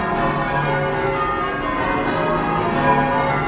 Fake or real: real